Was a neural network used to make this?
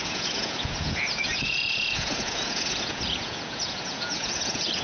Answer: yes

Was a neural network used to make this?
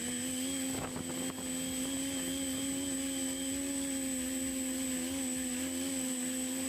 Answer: no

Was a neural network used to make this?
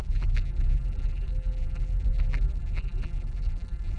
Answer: yes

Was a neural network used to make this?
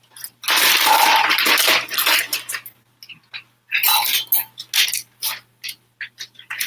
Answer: no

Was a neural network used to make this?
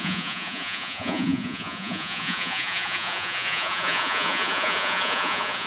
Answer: yes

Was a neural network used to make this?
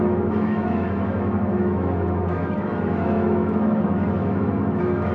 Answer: yes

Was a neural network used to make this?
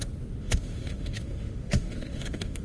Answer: yes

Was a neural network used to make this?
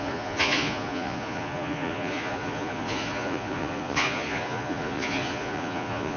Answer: yes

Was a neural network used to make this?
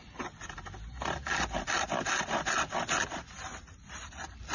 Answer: no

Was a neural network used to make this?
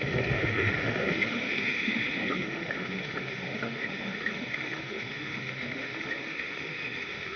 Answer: yes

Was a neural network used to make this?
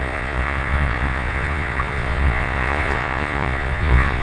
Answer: yes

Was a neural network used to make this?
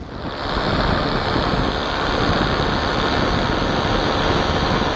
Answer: no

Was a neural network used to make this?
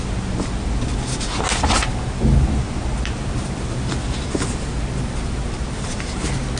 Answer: no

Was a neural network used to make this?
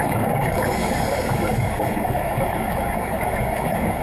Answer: yes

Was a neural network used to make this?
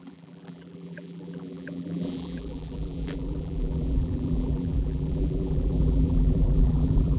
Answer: yes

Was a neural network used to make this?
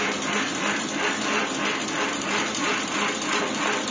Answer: no